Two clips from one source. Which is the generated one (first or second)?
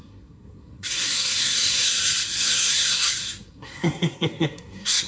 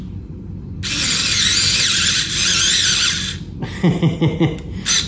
first